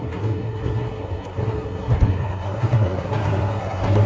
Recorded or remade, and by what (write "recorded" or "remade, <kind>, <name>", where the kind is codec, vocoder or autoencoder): remade, codec, SNAC